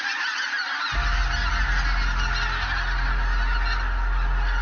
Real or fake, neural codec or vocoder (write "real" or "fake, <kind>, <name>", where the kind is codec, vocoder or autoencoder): real